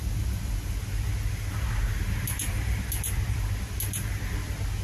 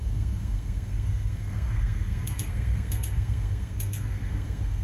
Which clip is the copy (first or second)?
second